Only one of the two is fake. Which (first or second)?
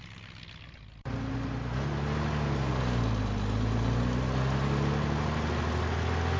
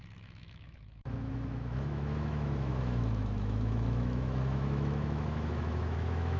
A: second